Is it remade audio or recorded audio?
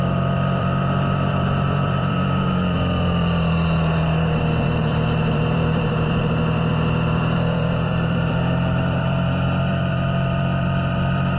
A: remade